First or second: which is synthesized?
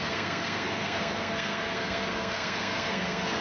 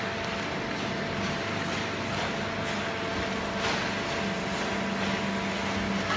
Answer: first